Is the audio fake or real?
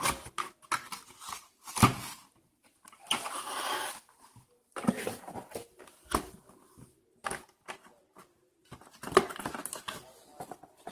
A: real